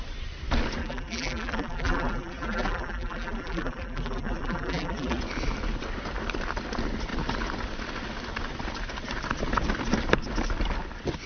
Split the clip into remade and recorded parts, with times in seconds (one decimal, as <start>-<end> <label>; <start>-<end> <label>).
0.0-0.8 recorded; 0.8-5.2 remade; 5.2-11.3 recorded